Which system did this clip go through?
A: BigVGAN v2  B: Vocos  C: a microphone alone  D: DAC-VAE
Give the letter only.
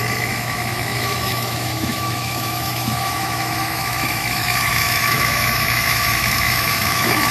D